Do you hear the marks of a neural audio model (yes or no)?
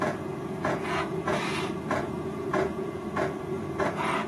yes